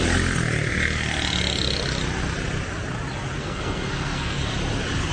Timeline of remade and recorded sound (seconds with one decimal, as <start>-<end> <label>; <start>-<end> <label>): 0.0-3.4 recorded; 3.4-4.5 remade; 4.5-5.1 recorded